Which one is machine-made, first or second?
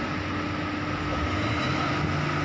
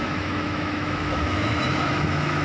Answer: second